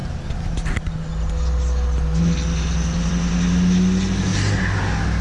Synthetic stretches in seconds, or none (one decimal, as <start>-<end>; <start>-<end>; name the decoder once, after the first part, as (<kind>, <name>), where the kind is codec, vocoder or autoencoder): none